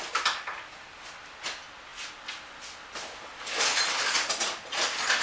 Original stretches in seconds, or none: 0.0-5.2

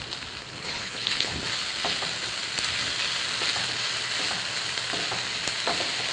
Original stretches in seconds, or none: 0.0-0.4; 1.3-6.1

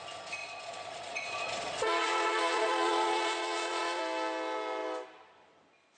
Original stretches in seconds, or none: 0.0-0.4; 4.0-6.0

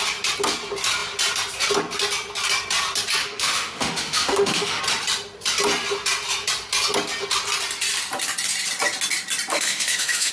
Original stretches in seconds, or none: 0.0-3.2; 4.8-9.5

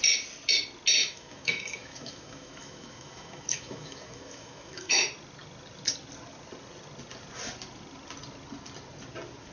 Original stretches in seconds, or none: 0.0-1.0; 5.0-9.5

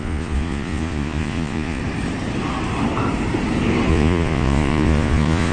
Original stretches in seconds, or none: 1.8-3.9